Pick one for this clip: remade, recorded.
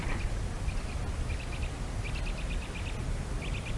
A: recorded